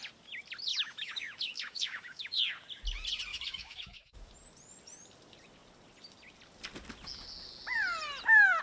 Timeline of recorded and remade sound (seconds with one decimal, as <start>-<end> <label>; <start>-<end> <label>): 0.0-0.7 recorded; 0.7-2.5 remade; 2.5-3.3 recorded; 3.3-4.3 remade; 4.3-8.6 recorded